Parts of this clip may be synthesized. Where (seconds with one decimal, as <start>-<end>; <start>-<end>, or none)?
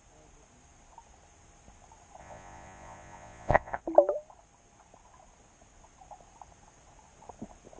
2.2-3.8